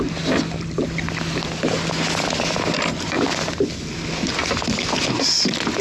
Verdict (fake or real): real